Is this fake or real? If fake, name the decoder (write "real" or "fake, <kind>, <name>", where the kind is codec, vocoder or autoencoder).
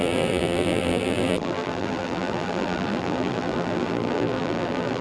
fake, vocoder, BigVGAN v2